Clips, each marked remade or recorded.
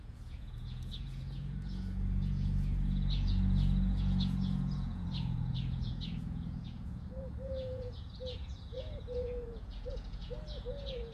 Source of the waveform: remade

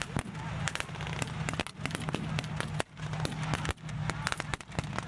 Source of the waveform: recorded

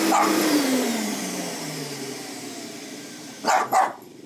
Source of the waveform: remade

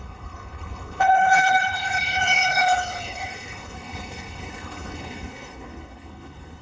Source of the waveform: remade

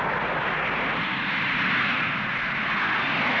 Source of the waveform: recorded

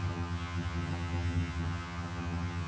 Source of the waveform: remade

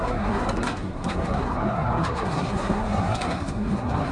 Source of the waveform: remade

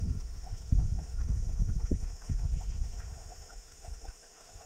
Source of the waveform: remade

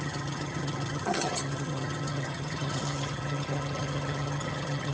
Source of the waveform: remade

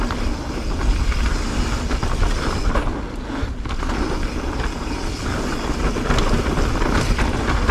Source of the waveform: recorded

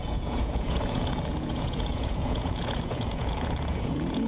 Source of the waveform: remade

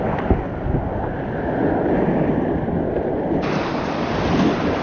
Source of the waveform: recorded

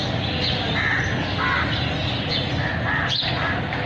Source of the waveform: recorded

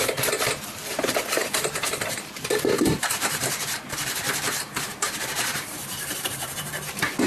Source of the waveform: remade